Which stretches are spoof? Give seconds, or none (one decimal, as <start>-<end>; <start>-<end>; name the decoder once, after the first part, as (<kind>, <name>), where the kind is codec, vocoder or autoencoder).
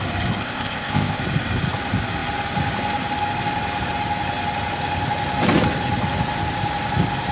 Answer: 0.4-1.2 (codec, ZipCodec)